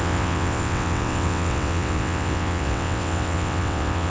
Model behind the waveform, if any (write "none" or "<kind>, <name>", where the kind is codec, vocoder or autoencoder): vocoder, WaveNeXt